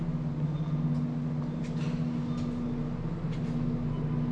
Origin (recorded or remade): recorded